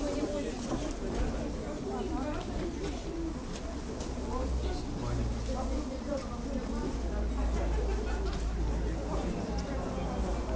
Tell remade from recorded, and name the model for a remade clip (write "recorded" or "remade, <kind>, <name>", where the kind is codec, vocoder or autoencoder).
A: recorded